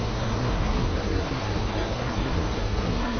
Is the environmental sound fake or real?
fake